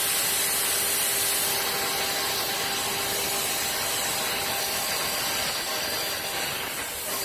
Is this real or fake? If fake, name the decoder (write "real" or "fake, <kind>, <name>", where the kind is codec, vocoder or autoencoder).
real